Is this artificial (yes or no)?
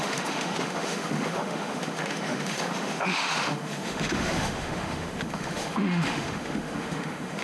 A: yes